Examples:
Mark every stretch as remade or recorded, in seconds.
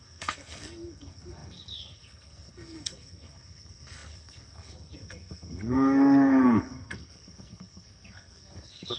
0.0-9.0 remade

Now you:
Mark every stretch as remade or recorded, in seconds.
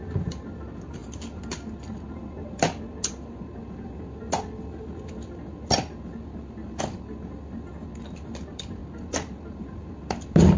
0.0-10.6 recorded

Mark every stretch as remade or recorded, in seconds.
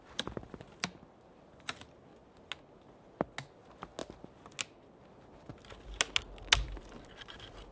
0.0-7.7 recorded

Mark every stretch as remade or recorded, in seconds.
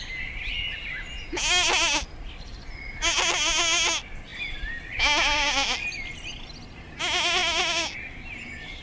0.0-8.8 recorded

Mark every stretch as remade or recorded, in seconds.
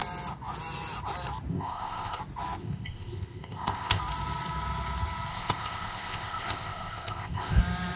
0.0-1.5 recorded; 1.5-2.2 remade; 2.2-2.6 recorded; 2.6-4.0 remade; 4.0-5.3 recorded; 5.3-7.6 remade; 7.6-8.0 recorded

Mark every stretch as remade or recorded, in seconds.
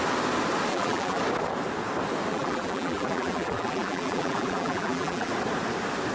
0.0-0.7 recorded; 0.7-1.2 remade; 1.2-2.3 recorded; 2.3-5.3 remade; 5.3-6.1 recorded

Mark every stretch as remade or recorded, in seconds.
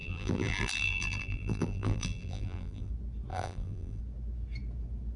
0.0-2.9 remade; 2.9-3.3 recorded; 3.3-4.0 remade; 4.0-5.2 recorded